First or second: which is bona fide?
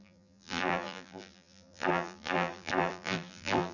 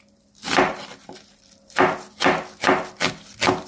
second